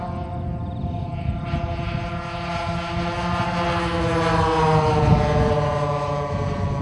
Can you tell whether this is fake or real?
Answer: real